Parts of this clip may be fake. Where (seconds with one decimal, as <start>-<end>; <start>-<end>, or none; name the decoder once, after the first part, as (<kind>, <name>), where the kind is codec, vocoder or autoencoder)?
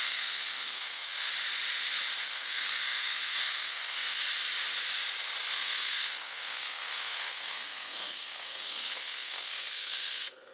0.0-1.3 (codec, SNAC); 2.2-4.2; 5.5-10.5